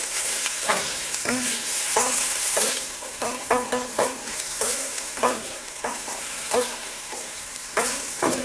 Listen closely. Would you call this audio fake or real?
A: fake